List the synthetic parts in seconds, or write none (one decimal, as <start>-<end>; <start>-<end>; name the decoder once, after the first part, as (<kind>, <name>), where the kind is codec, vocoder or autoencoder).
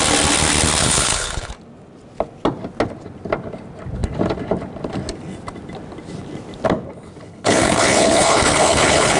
0.8-1.5 (codec, HILCodec); 7.3-9.2